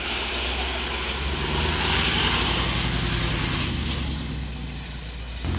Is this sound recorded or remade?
recorded